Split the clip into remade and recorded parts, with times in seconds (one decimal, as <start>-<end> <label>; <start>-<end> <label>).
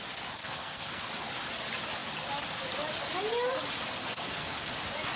0.0-0.4 recorded; 0.4-1.0 remade; 1.0-4.0 recorded; 4.0-4.7 remade; 4.7-5.2 recorded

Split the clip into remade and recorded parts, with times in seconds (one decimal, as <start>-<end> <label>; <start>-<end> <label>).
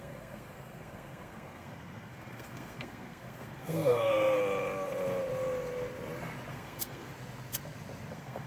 0.0-4.4 remade; 4.4-6.5 recorded; 6.5-7.1 remade; 7.1-8.1 recorded; 8.1-8.5 remade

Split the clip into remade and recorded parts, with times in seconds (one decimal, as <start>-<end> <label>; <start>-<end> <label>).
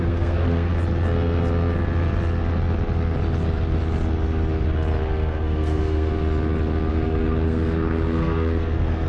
0.0-0.7 remade; 0.7-5.0 recorded; 5.0-6.1 remade; 6.1-6.9 recorded; 6.9-9.1 remade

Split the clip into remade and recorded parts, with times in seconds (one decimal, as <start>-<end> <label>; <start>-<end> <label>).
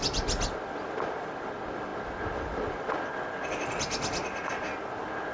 0.0-5.3 recorded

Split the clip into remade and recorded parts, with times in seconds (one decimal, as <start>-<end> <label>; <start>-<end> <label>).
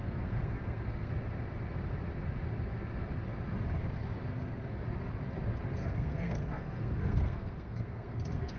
0.0-1.1 remade; 1.1-4.3 recorded; 4.3-4.8 remade; 4.8-5.8 recorded; 5.8-8.6 remade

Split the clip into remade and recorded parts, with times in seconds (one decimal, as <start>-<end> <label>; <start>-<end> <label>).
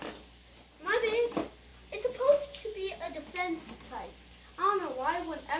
0.0-5.6 recorded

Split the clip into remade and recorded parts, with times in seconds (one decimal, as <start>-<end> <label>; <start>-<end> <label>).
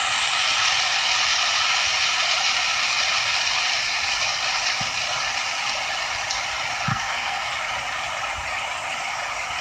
0.0-6.9 recorded; 6.9-7.5 remade; 7.5-9.6 recorded